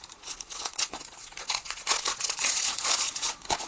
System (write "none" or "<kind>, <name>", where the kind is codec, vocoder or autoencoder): vocoder, Vocos